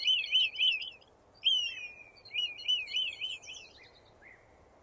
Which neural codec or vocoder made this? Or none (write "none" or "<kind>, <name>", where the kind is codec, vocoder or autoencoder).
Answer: none